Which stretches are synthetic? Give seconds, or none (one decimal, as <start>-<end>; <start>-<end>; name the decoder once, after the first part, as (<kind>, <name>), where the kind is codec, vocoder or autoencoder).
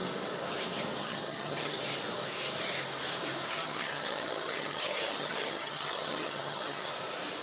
1.0-1.8 (vocoder, HiFi-GAN); 3.5-6.9